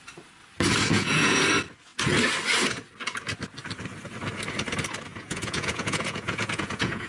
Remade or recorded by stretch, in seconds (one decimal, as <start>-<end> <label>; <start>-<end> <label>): 0.0-0.9 recorded; 0.9-1.4 remade; 1.4-5.1 recorded; 5.1-7.1 remade